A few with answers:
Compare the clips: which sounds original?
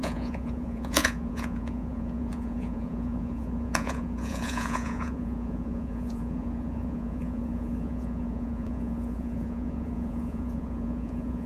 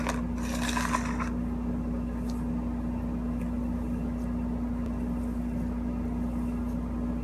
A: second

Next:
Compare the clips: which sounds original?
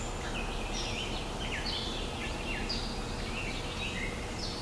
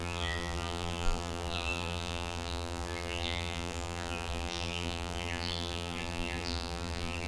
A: first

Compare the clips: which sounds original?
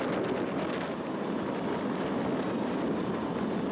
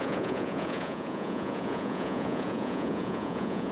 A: first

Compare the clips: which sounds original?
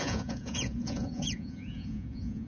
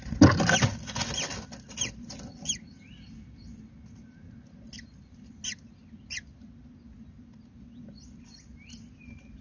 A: second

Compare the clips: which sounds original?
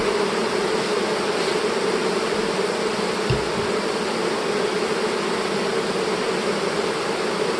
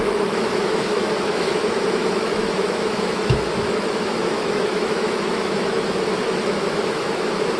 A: first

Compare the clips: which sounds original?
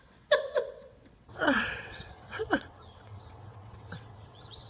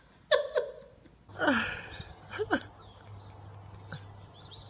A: second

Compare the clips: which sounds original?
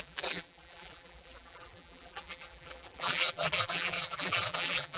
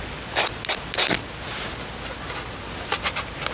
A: second